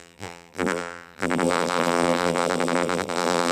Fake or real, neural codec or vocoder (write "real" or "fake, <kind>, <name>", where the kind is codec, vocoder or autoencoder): fake, vocoder, BigVGAN v2